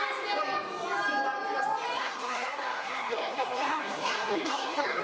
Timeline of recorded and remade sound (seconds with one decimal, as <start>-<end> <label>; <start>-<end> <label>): 0.0-2.0 recorded; 2.0-5.0 remade

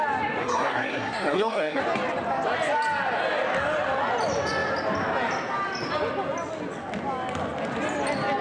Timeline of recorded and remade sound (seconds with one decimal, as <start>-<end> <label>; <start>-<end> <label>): 0.0-0.4 recorded; 0.4-1.8 remade; 1.8-8.4 recorded

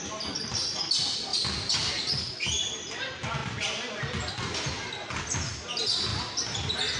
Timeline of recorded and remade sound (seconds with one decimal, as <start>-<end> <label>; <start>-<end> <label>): 0.0-7.0 recorded

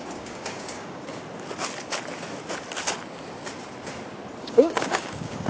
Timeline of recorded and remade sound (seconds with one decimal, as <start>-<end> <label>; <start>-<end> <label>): 0.0-1.2 remade; 1.2-4.4 recorded; 4.4-5.5 remade

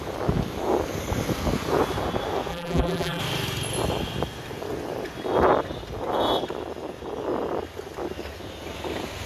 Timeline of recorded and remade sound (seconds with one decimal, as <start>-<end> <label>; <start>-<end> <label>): 0.0-2.5 recorded; 2.5-3.2 remade; 3.2-9.3 recorded

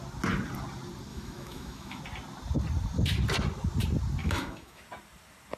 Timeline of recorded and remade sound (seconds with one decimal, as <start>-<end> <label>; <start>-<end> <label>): 0.0-1.1 recorded; 1.1-2.0 remade; 2.0-4.2 recorded; 4.2-4.8 remade; 4.8-5.6 recorded

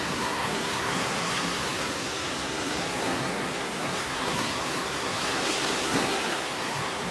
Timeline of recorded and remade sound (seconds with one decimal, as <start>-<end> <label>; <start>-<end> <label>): 0.0-7.1 remade

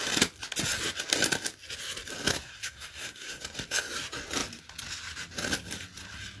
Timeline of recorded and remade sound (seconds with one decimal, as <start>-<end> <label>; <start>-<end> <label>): 0.0-2.3 recorded; 2.3-3.4 remade; 3.4-6.4 recorded